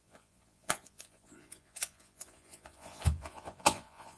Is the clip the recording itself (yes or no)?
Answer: no